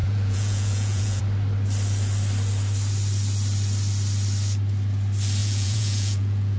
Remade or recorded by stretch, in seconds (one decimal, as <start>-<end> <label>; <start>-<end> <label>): 0.0-1.2 remade; 1.2-5.4 recorded; 5.4-6.6 remade